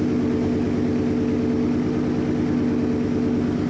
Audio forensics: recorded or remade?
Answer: recorded